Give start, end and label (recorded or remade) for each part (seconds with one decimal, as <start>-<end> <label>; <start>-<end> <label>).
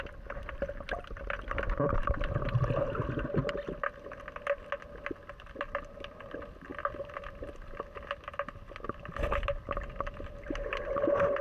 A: 0.0-11.4 recorded